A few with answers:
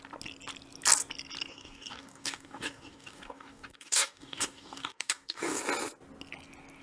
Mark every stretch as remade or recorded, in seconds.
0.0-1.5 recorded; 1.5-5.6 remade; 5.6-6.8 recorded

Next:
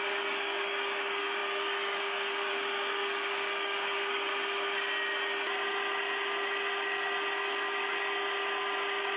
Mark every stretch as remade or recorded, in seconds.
0.0-4.3 remade; 4.3-9.2 recorded

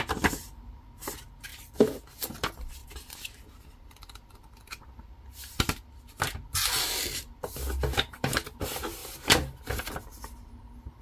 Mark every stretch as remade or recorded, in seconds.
0.0-11.0 recorded

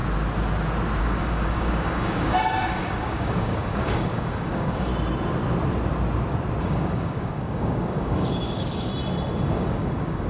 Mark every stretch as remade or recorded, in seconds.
0.0-1.0 recorded; 1.0-4.9 remade; 4.9-6.6 recorded; 6.6-8.9 remade; 8.9-9.5 recorded; 9.5-10.3 remade